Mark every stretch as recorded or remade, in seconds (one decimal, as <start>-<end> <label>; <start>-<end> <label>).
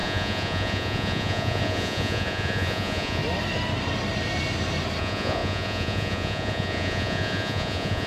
0.0-3.2 remade; 3.2-5.0 recorded; 5.0-8.1 remade